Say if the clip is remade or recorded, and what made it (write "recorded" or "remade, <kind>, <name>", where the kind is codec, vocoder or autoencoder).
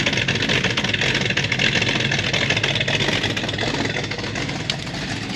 recorded